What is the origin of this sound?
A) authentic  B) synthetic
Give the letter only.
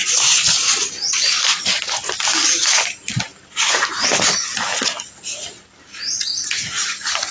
A